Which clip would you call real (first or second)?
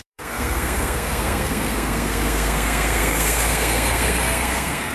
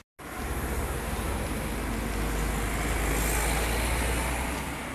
second